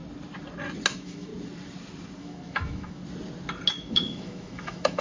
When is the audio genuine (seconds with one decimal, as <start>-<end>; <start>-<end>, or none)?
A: 0.0-0.9; 1.3-2.2; 3.0-3.7